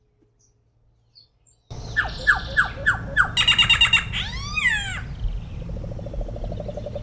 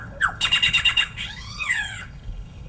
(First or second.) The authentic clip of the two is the first